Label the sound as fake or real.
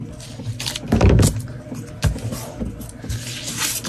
real